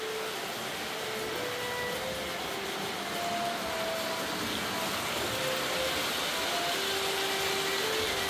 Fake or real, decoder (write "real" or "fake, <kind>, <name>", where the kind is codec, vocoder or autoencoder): real